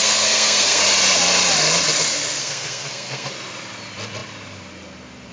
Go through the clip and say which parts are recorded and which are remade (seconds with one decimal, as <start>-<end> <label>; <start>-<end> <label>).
0.0-0.8 remade; 0.8-2.4 recorded; 2.4-3.3 remade; 3.3-5.3 recorded